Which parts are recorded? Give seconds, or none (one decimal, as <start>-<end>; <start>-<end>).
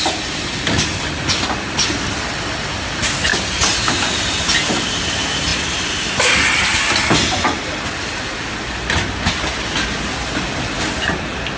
0.0-11.6